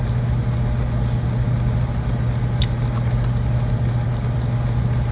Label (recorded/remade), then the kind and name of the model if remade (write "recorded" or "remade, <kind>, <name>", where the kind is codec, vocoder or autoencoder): recorded